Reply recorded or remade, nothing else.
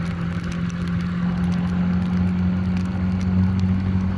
recorded